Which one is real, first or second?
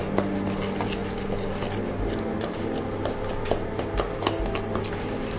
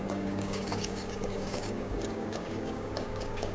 first